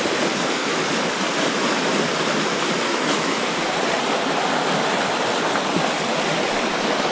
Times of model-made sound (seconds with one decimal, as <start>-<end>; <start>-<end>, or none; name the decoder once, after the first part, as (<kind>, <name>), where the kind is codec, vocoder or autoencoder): 0.6-1.1 (autoencoder, DAC-VAE); 2.9-3.7